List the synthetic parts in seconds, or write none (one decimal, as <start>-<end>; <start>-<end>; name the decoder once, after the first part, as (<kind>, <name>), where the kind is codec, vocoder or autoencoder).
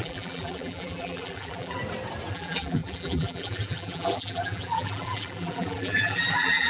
0.0-1.8 (vocoder, BigVGAN v2); 2.3-6.7